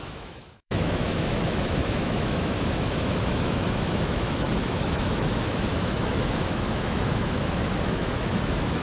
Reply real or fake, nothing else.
fake